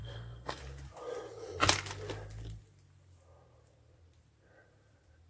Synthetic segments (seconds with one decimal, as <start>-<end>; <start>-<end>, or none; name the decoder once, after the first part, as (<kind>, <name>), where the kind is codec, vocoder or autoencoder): 0.0-0.6 (codec, SNAC)